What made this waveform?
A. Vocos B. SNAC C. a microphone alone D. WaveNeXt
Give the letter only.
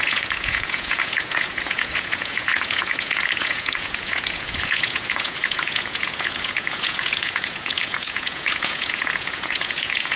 A